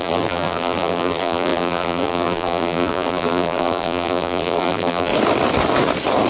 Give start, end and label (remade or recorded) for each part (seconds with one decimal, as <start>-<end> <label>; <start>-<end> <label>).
0.0-5.1 remade; 5.1-6.3 recorded